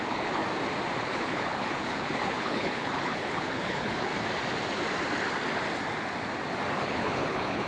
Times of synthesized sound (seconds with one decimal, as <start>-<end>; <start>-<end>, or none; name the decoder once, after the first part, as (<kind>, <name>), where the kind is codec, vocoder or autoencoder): 0.0-0.4 (codec, HILCodec); 1.0-4.1; 6.8-7.7